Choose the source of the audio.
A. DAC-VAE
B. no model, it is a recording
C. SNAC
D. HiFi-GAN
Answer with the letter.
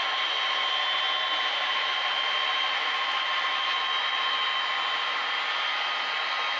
B